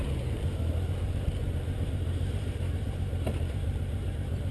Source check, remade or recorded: remade